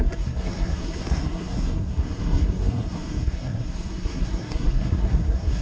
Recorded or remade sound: remade